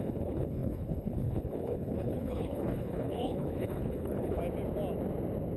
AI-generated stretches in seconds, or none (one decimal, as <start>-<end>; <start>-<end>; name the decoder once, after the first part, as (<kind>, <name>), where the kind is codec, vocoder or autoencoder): 0.0-4.4 (codec, HILCodec)